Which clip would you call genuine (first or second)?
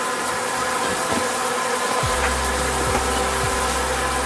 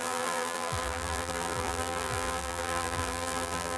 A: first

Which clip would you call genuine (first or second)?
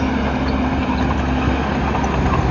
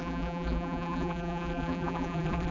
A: first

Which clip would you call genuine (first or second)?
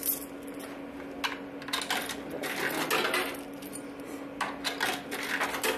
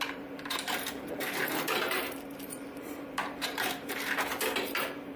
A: first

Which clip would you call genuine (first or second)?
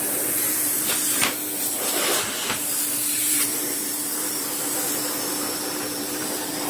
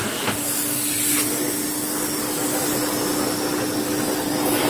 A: second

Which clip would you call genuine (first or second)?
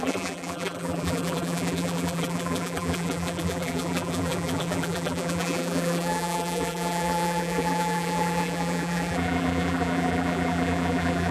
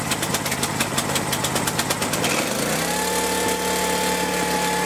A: second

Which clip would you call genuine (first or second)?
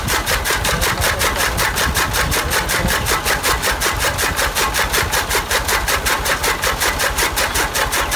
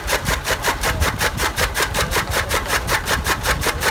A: first